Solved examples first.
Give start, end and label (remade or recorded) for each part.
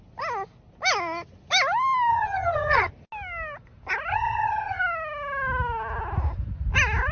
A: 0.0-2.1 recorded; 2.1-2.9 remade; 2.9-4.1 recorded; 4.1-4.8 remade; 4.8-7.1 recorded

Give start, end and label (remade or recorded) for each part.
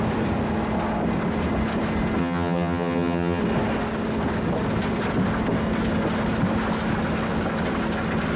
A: 0.0-2.2 recorded; 2.2-3.4 remade; 3.4-8.4 recorded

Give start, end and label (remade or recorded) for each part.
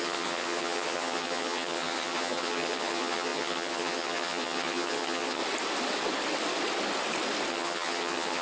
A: 0.0-5.4 remade; 5.4-7.5 recorded; 7.5-8.4 remade